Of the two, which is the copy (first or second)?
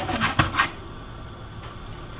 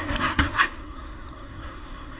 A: second